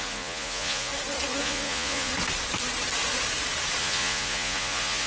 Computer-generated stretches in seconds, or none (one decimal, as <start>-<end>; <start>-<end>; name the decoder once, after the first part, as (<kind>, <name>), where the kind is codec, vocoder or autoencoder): 0.0-0.9 (vocoder, Vocos); 1.4-2.1; 3.8-5.1